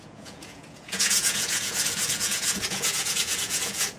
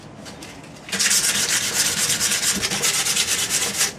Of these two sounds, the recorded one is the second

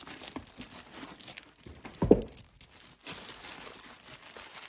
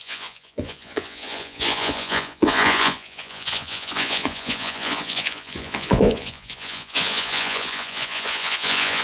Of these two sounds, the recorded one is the first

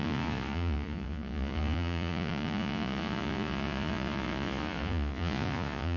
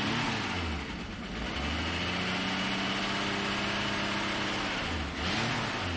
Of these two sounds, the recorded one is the second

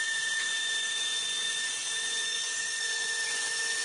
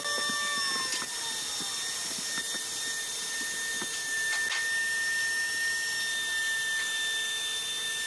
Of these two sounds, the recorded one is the second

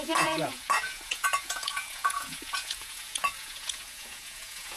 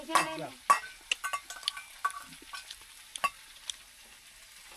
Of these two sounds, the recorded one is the second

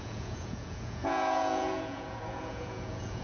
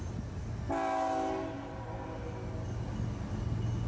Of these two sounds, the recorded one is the second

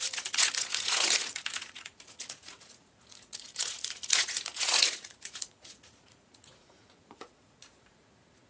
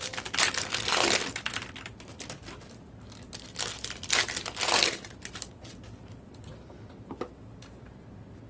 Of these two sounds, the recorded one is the second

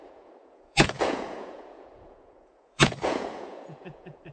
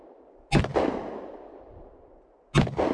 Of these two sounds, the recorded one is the second